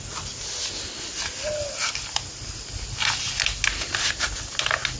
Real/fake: real